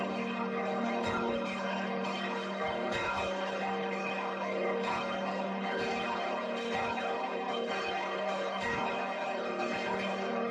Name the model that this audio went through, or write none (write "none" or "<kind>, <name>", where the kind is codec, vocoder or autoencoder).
codec, HILCodec